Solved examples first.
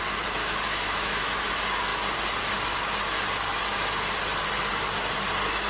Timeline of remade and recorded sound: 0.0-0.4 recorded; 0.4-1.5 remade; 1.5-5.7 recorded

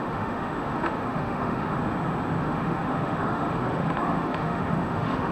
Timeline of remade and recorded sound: 0.0-1.8 remade; 1.8-2.4 recorded; 2.4-5.3 remade

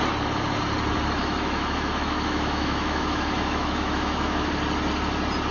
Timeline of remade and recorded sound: 0.0-1.2 recorded; 1.2-4.5 remade; 4.5-5.5 recorded